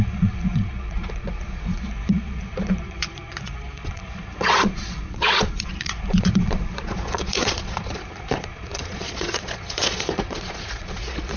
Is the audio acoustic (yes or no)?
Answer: no